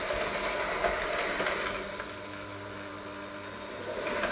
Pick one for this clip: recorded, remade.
recorded